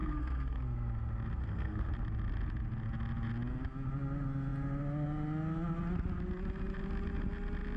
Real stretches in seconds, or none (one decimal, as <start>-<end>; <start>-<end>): 0.6-1.4; 1.9-7.8